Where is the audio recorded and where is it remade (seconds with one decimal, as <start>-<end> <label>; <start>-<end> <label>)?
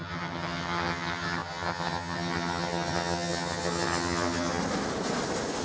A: 0.0-4.6 remade; 4.6-5.6 recorded